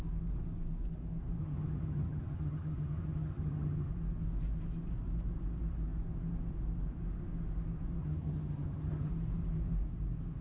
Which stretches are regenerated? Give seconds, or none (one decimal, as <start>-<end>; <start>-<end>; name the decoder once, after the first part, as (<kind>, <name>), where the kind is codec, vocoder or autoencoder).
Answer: 1.4-3.9 (vocoder, HiFi-GAN); 8.0-9.1